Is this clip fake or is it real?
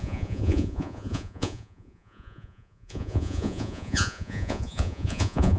fake